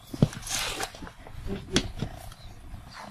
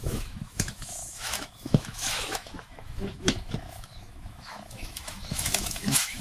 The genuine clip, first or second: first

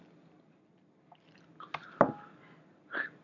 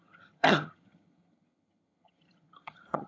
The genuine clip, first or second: first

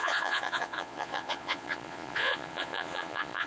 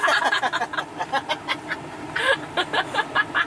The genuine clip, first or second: second